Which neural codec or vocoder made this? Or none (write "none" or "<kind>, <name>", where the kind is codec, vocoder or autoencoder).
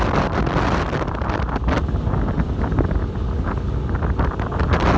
none